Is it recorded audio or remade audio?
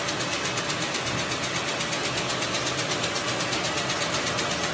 recorded